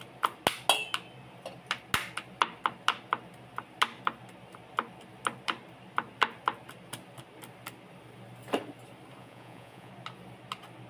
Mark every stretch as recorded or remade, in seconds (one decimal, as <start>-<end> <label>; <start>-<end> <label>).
0.0-9.2 recorded; 9.2-9.9 remade; 9.9-10.9 recorded